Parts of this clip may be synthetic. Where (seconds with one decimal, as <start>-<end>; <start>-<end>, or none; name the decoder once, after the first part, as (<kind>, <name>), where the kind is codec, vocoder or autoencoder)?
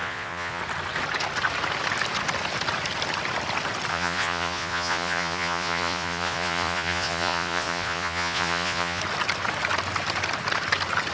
0.0-0.6 (vocoder, Vocos); 3.9-9.0